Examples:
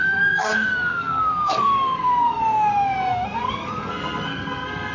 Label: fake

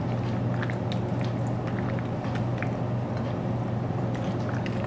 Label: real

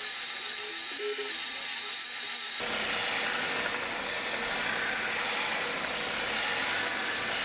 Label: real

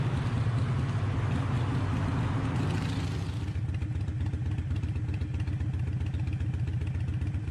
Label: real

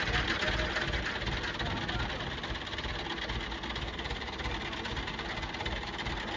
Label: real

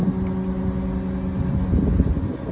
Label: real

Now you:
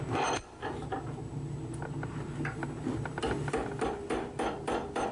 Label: real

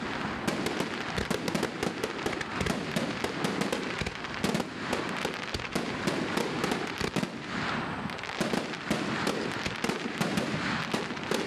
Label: real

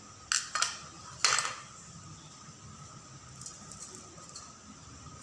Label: real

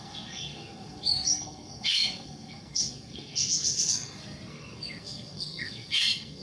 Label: fake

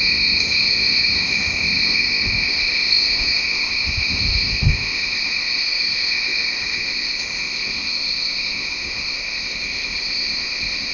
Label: fake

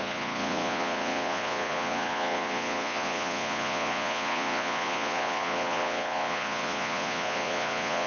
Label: fake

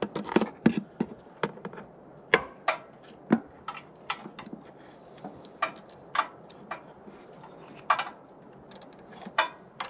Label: real